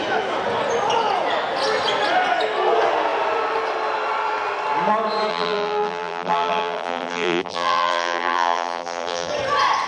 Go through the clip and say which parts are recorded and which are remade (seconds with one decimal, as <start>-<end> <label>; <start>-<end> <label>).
0.0-5.3 recorded; 5.3-9.3 remade; 9.3-9.9 recorded